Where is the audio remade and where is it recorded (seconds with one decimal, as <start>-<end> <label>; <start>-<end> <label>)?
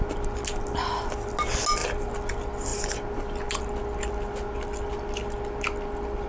0.0-6.3 recorded